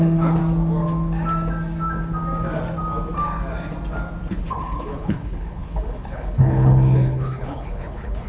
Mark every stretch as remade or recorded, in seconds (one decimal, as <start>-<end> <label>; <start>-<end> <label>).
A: 0.0-0.4 remade; 0.4-4.3 recorded; 4.3-8.3 remade